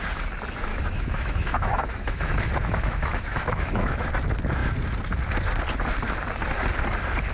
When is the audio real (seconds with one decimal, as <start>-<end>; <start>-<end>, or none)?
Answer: 0.0-0.7; 4.1-7.3